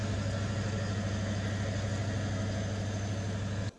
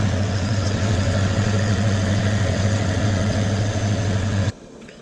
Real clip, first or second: first